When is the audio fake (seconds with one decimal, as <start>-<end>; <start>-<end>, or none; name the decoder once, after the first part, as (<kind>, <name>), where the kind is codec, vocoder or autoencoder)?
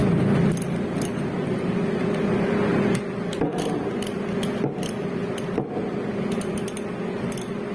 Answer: none